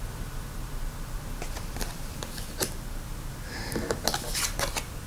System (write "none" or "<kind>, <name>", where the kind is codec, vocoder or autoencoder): none